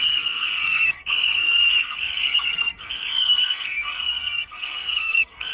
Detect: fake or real fake